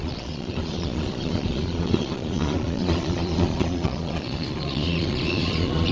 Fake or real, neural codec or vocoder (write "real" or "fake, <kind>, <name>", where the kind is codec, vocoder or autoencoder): fake, vocoder, Vocos